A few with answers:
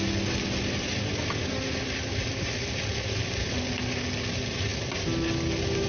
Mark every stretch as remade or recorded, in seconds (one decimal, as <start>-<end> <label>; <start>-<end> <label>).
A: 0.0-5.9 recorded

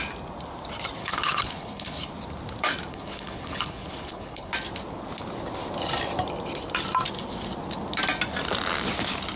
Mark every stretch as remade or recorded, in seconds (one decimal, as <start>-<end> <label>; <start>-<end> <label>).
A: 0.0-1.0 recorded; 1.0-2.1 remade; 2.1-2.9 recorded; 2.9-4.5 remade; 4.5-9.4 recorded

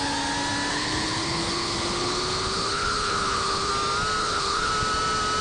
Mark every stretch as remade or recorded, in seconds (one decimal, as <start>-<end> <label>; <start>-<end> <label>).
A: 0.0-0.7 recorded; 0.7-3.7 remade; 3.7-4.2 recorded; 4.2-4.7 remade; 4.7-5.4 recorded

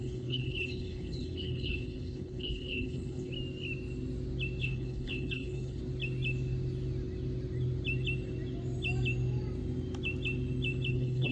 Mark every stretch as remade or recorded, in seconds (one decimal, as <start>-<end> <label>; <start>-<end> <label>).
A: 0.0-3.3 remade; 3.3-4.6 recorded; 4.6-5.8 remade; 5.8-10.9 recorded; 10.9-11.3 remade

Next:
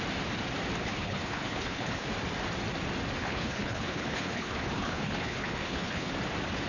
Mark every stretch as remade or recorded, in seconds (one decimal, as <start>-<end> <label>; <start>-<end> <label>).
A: 0.0-0.8 recorded; 0.8-2.1 remade; 2.1-3.2 recorded; 3.2-6.1 remade; 6.1-6.7 recorded